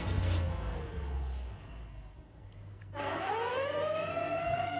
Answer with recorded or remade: remade